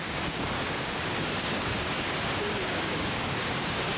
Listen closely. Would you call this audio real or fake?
fake